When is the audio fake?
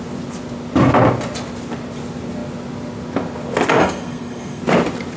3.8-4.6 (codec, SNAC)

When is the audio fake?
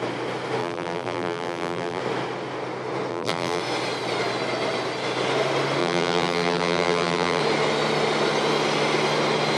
0.6-2.0 (vocoder, BigVGAN v2); 3.1-3.6; 5.8-7.4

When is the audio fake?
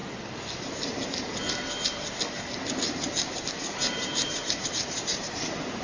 3.5-5.8 (vocoder, BigVGAN v2)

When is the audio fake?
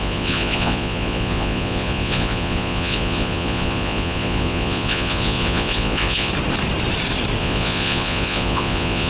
0.0-6.3 (vocoder, Vocos); 7.4-9.1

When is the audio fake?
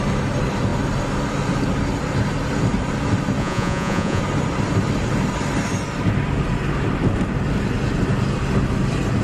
3.4-4.2 (vocoder, Vocos)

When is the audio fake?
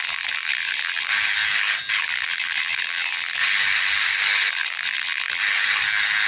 0.0-1.1 (vocoder, BigVGAN v2); 2.0-3.4; 4.5-5.4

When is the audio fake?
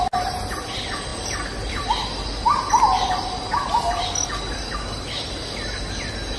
none